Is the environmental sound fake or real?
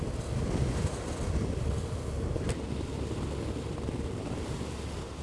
real